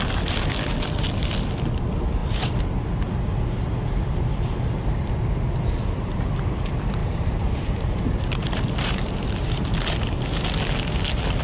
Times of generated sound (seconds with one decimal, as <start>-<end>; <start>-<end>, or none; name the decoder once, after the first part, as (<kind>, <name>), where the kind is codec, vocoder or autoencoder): 7.0-9.8 (vocoder, BigVGAN v2)